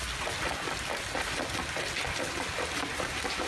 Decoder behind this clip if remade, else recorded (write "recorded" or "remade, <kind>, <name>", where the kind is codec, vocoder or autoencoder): recorded